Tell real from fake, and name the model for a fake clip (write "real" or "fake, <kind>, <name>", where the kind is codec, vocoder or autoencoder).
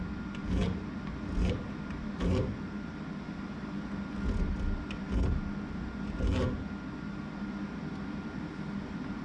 real